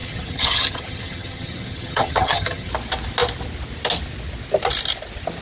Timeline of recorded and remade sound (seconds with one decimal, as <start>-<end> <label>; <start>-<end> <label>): 0.0-2.7 remade; 2.7-5.4 recorded

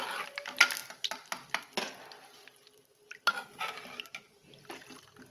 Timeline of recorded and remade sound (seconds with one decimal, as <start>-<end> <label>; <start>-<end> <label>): 0.0-5.3 recorded

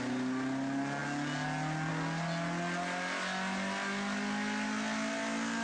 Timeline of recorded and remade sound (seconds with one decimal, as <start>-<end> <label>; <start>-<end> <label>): 0.0-5.6 recorded

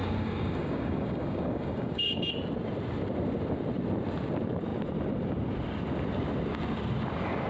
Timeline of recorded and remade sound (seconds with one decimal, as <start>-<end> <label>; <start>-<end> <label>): 0.0-2.3 remade; 2.3-7.5 recorded

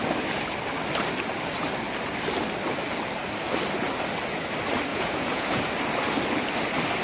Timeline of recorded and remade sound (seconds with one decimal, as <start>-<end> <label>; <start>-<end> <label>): 0.0-4.9 recorded; 4.9-5.7 remade; 5.7-7.0 recorded

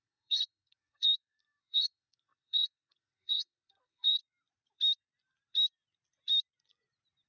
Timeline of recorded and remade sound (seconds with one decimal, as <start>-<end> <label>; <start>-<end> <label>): 0.0-4.2 remade; 4.2-7.3 recorded

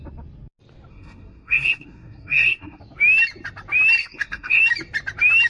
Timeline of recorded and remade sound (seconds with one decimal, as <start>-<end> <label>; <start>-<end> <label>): 0.0-0.9 recorded; 0.9-2.8 remade; 2.8-4.0 recorded; 4.0-4.6 remade; 4.6-5.5 recorded

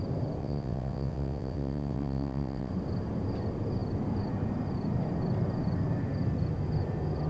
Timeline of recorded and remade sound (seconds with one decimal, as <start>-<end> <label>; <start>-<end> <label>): 0.0-0.4 recorded; 0.4-2.7 remade; 2.7-7.3 recorded